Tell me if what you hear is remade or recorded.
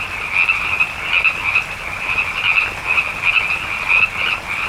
recorded